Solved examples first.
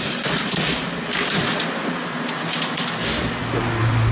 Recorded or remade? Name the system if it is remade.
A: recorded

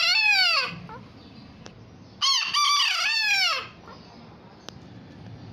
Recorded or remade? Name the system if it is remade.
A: recorded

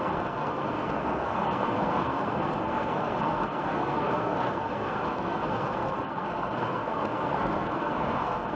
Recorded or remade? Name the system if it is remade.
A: remade, codec, SNAC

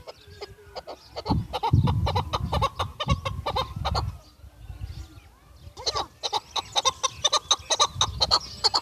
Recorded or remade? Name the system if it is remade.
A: recorded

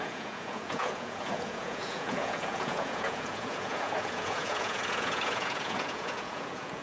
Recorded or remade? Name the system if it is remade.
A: remade, vocoder, Vocos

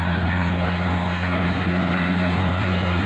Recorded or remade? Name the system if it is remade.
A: remade, codec, SNAC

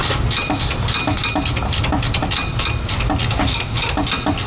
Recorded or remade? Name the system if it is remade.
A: recorded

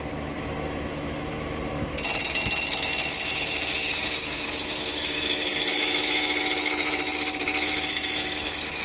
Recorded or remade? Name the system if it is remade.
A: remade, autoencoder, DAC-VAE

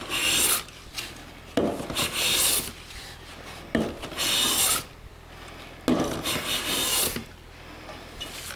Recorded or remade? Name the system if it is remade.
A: recorded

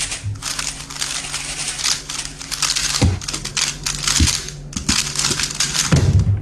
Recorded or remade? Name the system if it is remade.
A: recorded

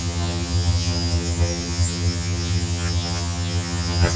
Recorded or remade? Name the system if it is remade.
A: remade, vocoder, HiFi-GAN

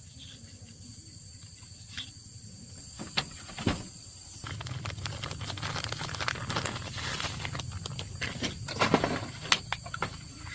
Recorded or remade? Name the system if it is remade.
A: recorded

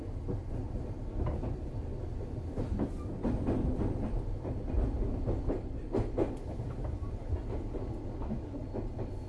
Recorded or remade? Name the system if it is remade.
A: recorded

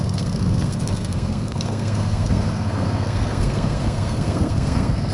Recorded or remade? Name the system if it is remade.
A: remade, codec, SNAC